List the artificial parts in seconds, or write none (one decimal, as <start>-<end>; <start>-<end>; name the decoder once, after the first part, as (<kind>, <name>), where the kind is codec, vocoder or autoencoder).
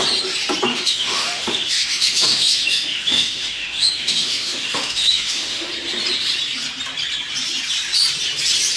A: 0.7-5.7 (autoencoder, DAC-VAE)